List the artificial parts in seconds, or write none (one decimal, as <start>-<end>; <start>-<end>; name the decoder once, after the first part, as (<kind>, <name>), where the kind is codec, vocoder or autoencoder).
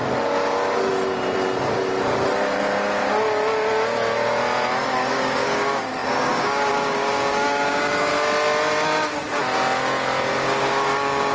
4.9-8.1 (codec, DAC); 10.3-11.3